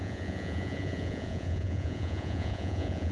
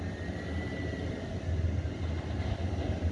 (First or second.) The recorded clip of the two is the second